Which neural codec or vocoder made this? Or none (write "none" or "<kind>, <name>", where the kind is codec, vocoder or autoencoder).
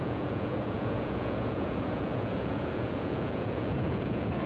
vocoder, Vocos